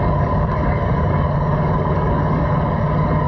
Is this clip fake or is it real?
fake